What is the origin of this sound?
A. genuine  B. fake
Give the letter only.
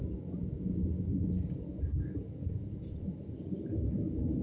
A